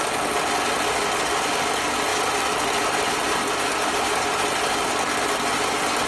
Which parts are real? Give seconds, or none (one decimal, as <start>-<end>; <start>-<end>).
0.0-2.1; 3.9-6.1